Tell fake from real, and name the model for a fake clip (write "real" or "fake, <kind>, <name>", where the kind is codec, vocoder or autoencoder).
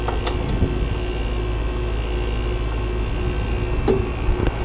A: real